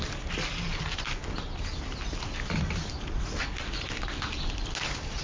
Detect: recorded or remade recorded